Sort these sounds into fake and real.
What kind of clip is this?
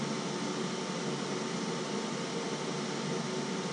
real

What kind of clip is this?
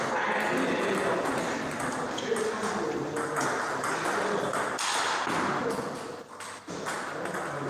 real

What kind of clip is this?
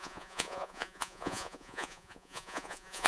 fake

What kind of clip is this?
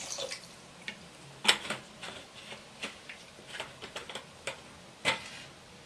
real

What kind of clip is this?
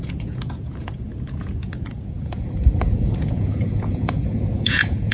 fake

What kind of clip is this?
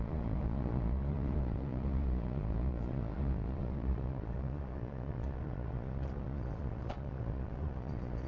fake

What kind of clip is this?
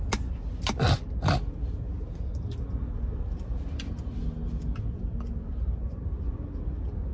real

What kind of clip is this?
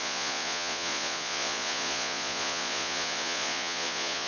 fake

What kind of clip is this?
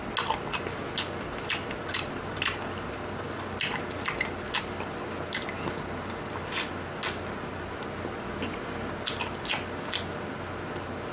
real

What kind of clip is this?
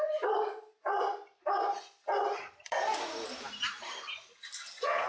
real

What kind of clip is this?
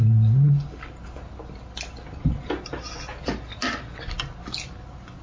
real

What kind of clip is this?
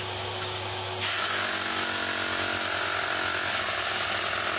real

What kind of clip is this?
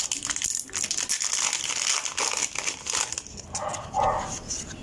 real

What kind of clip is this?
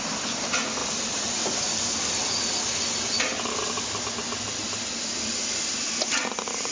real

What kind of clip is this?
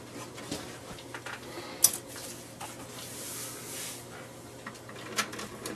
real